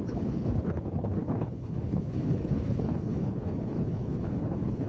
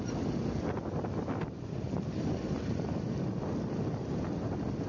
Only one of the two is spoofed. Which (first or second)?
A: first